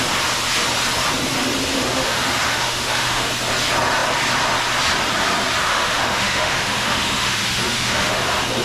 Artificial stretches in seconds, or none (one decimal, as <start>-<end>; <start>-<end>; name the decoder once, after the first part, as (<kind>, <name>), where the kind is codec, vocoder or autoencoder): 1.7-3.3 (autoencoder, DAC-VAE); 5.6-8.2